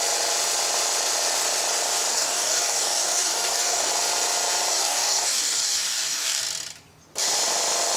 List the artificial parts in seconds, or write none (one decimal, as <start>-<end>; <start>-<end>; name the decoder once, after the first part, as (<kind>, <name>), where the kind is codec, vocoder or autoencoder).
2.1-3.9 (codec, DAC); 4.7-6.4